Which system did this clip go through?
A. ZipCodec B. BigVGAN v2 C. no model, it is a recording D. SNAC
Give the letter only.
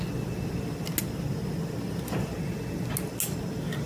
C